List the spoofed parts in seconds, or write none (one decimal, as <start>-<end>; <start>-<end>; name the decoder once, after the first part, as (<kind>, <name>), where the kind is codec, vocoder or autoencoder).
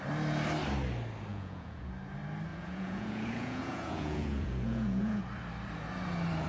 1.3-1.9 (vocoder, Vocos); 2.5-5.2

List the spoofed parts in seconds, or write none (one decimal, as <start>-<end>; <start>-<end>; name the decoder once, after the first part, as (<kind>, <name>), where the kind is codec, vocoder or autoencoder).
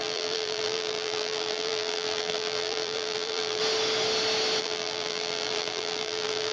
0.0-3.6 (vocoder, BigVGAN v2); 4.6-6.5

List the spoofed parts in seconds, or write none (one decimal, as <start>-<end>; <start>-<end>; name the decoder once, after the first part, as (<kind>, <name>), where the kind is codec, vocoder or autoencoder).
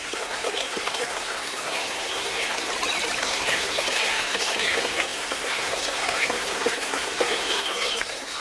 0.0-2.7 (codec, SNAC); 3.2-8.4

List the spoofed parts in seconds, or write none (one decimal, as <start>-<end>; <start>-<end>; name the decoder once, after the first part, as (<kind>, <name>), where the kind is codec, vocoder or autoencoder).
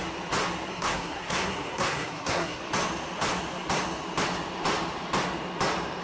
0.7-2.6 (codec, SNAC)